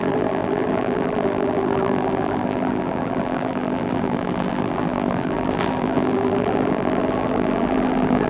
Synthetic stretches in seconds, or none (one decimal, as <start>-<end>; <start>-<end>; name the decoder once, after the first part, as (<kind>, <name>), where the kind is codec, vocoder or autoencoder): 0.0-8.3 (vocoder, BigVGAN v2)